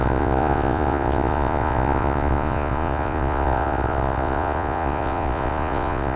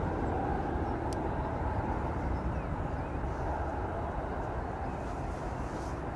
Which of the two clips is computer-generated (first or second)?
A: first